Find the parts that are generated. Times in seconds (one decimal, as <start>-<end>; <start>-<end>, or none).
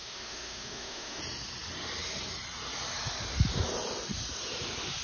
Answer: 0.0-1.2